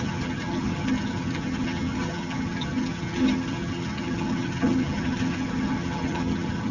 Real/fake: fake